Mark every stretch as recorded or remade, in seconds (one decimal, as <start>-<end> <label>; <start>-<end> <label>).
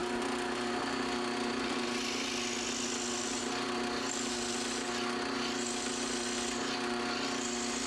0.0-7.9 recorded